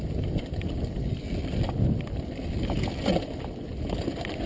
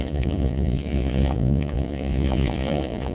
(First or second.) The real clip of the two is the first